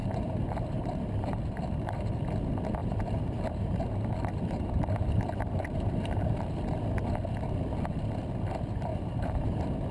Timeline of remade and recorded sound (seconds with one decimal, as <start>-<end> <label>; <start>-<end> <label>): 0.0-1.9 remade; 1.9-2.8 recorded; 2.8-6.6 remade; 6.6-8.9 recorded; 8.9-9.9 remade